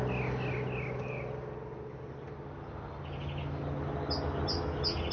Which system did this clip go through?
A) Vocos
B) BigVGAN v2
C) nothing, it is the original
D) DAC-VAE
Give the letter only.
C